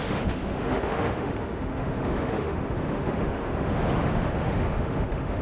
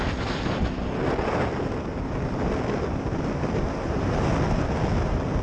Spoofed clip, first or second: first